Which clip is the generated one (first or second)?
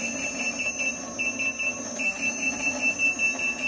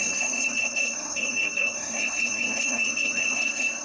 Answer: second